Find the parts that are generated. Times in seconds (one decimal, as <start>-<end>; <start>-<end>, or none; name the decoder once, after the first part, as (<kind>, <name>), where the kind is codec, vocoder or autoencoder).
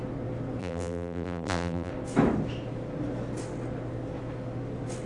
0.6-1.9 (vocoder, BigVGAN v2)